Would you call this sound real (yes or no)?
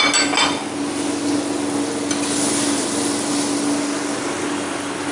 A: yes